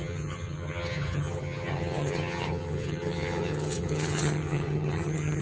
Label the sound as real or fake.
fake